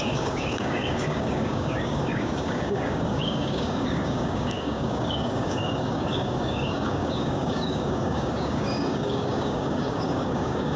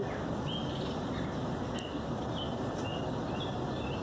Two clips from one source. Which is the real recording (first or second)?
second